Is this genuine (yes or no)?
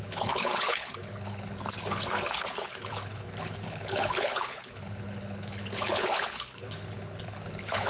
no